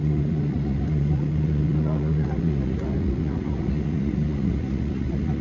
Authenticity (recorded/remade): remade